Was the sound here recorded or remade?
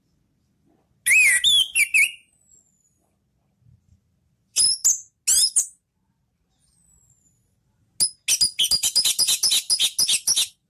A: recorded